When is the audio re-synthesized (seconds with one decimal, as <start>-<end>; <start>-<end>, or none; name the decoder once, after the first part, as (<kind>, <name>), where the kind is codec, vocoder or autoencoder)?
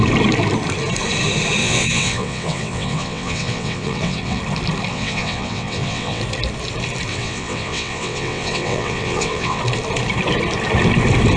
1.6-4.4 (vocoder, WaveNeXt); 4.9-6.2; 7.1-9.6